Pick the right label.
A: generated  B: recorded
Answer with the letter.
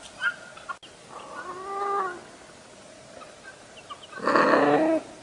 B